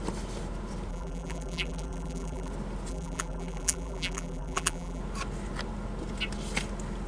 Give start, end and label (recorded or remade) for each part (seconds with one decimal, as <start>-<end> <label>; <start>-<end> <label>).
0.0-0.9 recorded; 0.9-2.5 remade; 2.5-2.9 recorded; 2.9-5.0 remade; 5.0-7.1 recorded